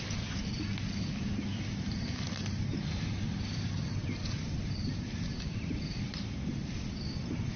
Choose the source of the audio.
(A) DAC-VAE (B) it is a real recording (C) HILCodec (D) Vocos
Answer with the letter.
B